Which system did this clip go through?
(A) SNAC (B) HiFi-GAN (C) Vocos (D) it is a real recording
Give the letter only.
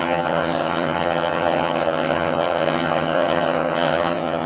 B